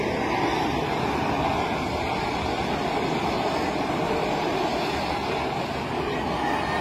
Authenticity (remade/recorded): recorded